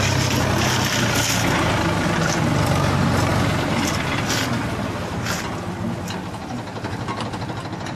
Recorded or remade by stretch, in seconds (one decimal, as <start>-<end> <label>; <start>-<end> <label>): 0.0-7.9 recorded